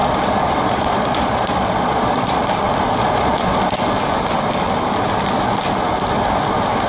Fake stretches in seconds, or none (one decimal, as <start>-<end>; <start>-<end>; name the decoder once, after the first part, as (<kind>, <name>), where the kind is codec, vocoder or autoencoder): 0.0-2.4 (vocoder, Vocos); 3.0-3.7